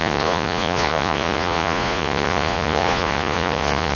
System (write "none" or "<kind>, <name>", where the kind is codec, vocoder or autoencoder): vocoder, Vocos